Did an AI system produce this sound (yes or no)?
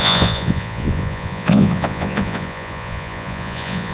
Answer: yes